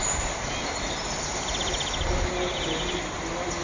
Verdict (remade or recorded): recorded